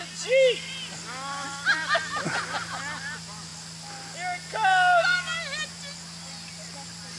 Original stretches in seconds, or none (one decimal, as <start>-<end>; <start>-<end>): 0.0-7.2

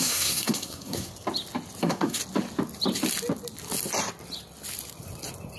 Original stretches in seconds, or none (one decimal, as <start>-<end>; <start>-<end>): 1.1-1.8; 2.2-5.6

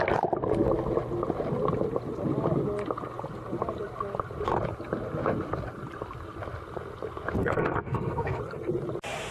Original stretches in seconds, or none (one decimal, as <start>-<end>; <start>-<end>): 0.0-7.4; 8.4-9.3

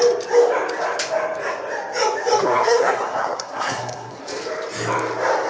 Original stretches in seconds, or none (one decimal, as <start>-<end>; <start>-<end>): 0.0-2.4; 4.2-5.5

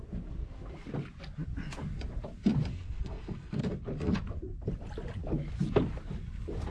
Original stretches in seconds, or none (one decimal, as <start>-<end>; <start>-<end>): 0.0-2.7; 3.6-6.7